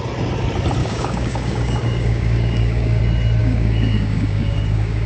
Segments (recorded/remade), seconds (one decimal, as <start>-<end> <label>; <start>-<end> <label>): 0.0-0.8 recorded; 0.8-3.0 remade; 3.0-3.4 recorded; 3.4-5.1 remade